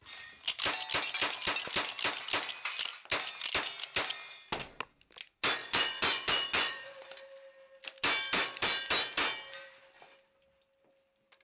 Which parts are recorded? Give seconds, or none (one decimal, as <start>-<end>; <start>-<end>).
0.0-5.6; 7.0-11.4